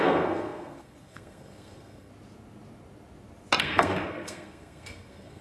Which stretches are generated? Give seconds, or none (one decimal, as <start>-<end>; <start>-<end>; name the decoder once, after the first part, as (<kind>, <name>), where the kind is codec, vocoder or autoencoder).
0.0-2.1 (codec, SNAC); 3.6-5.4